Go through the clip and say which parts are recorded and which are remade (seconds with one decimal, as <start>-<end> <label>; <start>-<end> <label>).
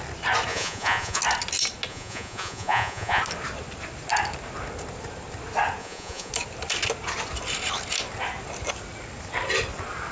0.0-0.5 recorded; 0.5-1.2 remade; 1.2-1.9 recorded; 1.9-3.2 remade; 3.2-5.8 recorded; 5.8-6.3 remade; 6.3-10.1 recorded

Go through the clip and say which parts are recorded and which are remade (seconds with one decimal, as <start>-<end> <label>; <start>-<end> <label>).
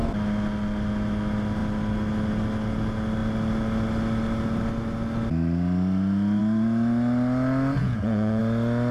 0.0-7.8 recorded; 7.8-8.4 remade; 8.4-8.9 recorded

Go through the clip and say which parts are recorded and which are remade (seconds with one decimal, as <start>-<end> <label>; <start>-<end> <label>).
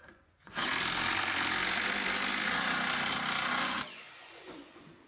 0.0-0.7 remade; 0.7-3.5 recorded; 3.5-5.1 remade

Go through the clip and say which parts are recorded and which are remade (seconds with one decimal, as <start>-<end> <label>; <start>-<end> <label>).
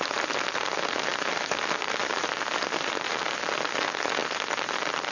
0.0-5.1 recorded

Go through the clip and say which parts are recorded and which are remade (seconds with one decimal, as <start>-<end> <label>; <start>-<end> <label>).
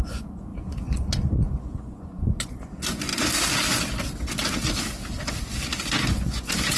0.0-3.1 remade; 3.1-6.1 recorded; 6.1-6.8 remade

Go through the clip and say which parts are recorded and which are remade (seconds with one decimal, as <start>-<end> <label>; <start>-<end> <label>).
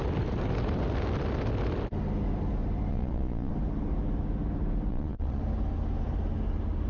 0.0-2.9 recorded; 2.9-3.5 remade; 3.5-4.9 recorded; 4.9-5.4 remade; 5.4-6.9 recorded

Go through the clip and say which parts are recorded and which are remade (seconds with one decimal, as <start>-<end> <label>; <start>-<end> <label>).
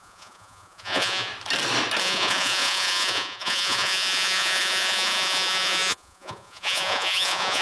0.0-1.3 remade; 1.3-2.0 recorded; 2.0-7.6 remade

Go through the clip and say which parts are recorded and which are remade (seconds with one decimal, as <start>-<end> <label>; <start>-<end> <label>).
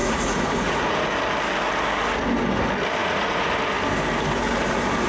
0.0-1.1 remade; 1.1-3.0 recorded; 3.0-3.5 remade; 3.5-5.1 recorded